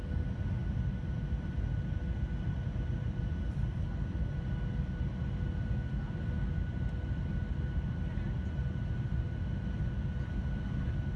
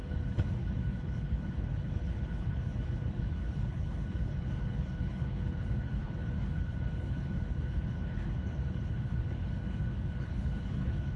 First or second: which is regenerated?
second